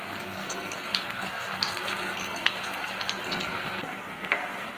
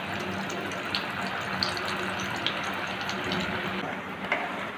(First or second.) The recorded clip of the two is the second